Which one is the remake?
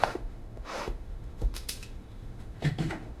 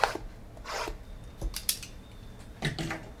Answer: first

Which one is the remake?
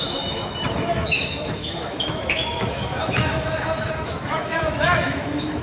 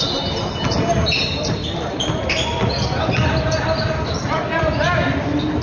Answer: first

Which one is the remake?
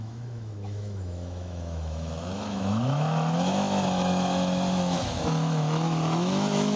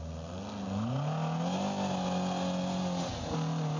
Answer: first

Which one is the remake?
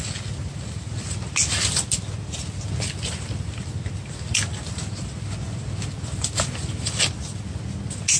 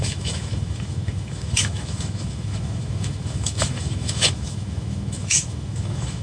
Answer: second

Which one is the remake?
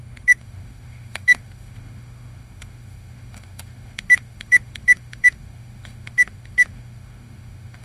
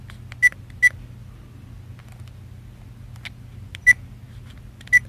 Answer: first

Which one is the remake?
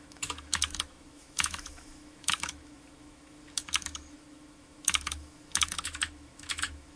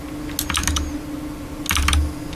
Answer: first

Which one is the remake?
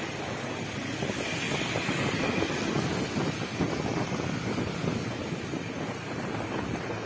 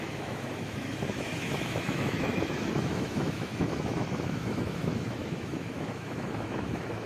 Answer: second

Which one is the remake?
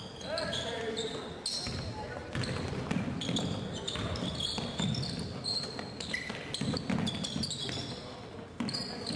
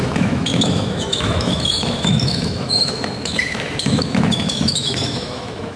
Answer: second